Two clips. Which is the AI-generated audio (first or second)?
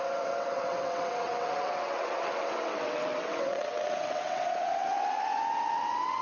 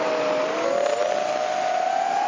first